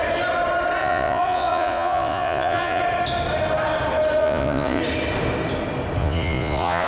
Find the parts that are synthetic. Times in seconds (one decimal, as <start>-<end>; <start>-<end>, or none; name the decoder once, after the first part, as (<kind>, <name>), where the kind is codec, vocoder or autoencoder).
0.8-2.8 (vocoder, Vocos); 4.2-4.8; 6.0-6.9